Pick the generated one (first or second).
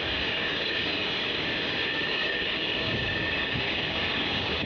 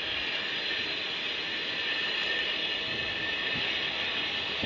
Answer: first